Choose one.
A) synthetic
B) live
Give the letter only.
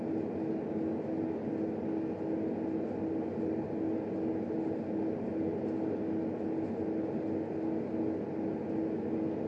B